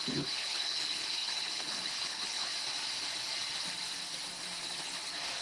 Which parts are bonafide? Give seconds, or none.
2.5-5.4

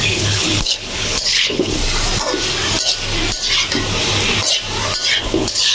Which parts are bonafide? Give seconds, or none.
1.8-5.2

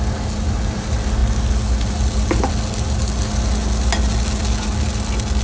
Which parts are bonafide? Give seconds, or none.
0.0-5.4

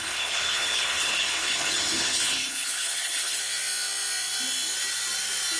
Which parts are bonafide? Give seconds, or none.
3.4-5.6

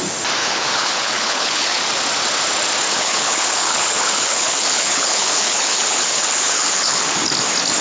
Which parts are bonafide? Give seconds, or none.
0.0-0.4; 1.8-2.9; 7.2-7.8

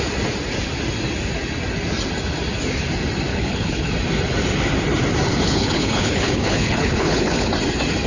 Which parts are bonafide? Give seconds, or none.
0.0-3.3; 3.9-5.3; 7.5-8.1

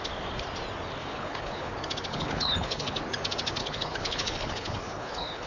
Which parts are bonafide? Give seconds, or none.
0.0-1.0; 1.7-2.1; 3.0-3.6

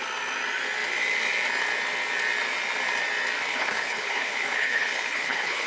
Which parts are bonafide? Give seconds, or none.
0.0-3.5